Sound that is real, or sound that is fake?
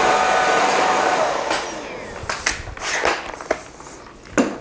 real